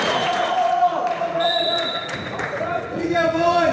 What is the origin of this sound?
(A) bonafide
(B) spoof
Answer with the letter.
B